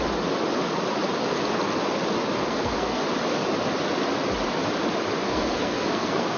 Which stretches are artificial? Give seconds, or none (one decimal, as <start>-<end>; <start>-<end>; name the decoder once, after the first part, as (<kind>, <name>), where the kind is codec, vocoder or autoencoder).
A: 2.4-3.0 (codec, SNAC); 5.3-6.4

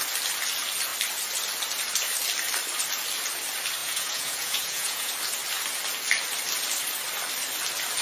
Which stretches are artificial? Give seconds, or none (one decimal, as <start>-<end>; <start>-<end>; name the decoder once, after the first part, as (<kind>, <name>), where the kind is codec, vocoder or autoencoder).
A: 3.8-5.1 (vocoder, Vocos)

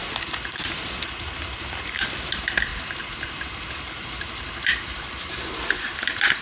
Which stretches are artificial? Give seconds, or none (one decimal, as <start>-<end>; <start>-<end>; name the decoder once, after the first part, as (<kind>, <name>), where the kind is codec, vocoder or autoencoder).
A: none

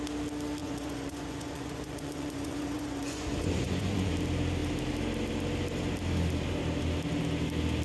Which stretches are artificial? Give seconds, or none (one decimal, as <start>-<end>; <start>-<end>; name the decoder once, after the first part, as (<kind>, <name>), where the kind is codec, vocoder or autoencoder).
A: 0.6-4.1 (vocoder, Vocos)